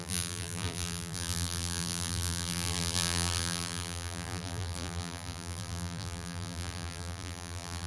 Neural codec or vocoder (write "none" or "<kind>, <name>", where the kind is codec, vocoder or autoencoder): vocoder, BigVGAN v2